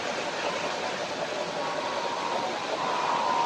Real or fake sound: real